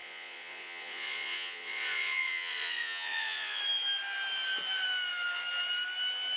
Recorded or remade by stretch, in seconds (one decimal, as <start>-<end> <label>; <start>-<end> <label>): 0.0-3.6 remade; 3.6-6.4 recorded